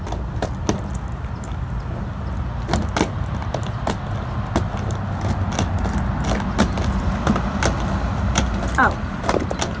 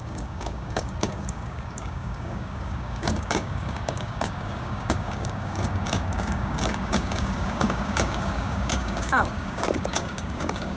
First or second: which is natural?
first